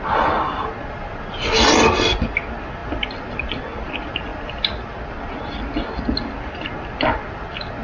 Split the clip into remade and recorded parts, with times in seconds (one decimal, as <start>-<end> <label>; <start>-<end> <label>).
0.0-7.8 recorded